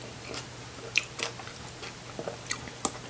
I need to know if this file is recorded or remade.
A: recorded